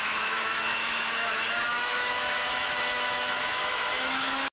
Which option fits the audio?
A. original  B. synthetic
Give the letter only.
B